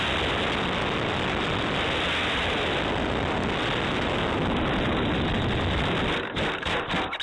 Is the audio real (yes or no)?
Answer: yes